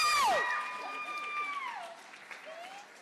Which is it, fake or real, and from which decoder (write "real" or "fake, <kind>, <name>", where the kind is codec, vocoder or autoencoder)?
real